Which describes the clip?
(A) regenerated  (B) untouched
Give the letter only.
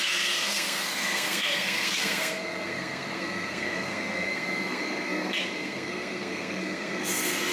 A